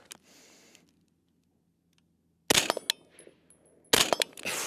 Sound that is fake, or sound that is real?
real